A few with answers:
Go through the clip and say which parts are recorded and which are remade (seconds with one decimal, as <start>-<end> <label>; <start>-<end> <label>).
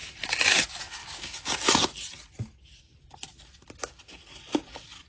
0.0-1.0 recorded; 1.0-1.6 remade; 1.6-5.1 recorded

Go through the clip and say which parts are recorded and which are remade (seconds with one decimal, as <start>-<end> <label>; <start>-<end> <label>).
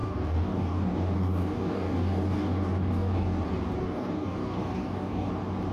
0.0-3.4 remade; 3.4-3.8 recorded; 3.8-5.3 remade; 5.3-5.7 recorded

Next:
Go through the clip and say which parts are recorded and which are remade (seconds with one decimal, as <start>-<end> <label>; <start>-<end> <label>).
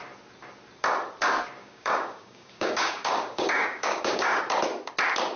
0.0-1.6 recorded; 1.6-4.4 remade; 4.4-5.4 recorded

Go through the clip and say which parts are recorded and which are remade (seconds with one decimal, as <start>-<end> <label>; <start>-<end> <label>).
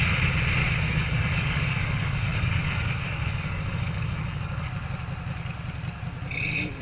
0.0-0.6 recorded; 0.6-4.7 remade; 4.7-6.8 recorded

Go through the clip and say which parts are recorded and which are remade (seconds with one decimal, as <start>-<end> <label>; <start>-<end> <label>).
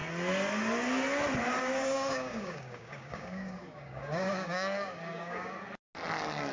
0.0-1.6 recorded; 1.6-5.5 remade; 5.5-6.5 recorded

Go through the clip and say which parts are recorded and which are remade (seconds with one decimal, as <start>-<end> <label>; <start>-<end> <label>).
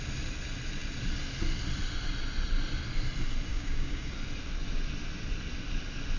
0.0-3.5 recorded; 3.5-4.1 remade; 4.1-6.2 recorded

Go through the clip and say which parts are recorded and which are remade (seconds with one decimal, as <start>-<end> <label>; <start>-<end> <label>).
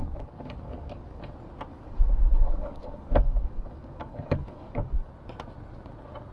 0.0-1.2 remade; 1.2-1.7 recorded; 1.7-5.1 remade; 5.1-6.3 recorded